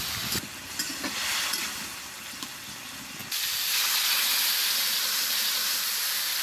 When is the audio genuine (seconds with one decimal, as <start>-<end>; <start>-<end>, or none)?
0.0-4.6